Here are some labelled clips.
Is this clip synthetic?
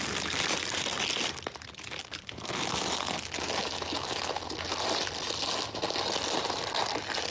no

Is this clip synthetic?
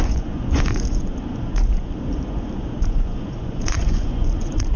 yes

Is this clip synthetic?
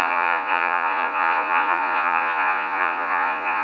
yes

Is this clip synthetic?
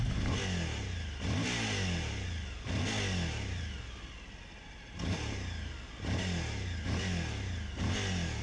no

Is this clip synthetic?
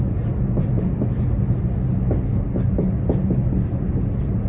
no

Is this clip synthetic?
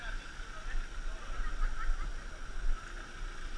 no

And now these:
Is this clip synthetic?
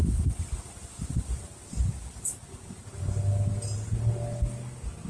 no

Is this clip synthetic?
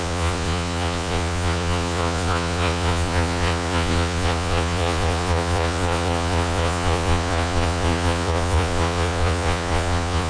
yes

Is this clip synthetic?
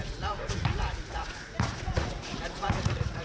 yes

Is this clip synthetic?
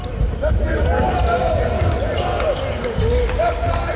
no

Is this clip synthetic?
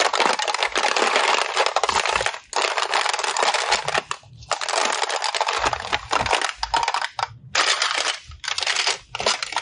no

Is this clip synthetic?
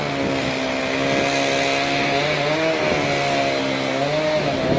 no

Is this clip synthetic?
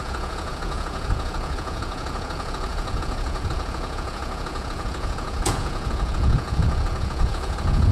yes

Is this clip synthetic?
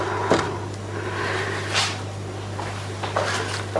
no